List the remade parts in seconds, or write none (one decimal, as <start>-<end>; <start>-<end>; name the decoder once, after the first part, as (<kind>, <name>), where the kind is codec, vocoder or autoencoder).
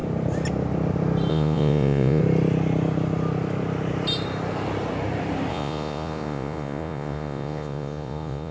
1.3-2.2 (vocoder, Vocos); 5.5-8.5